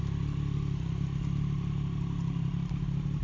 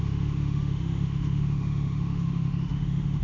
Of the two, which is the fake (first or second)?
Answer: second